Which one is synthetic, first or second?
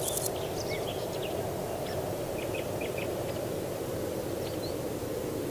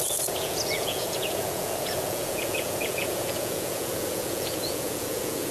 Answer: second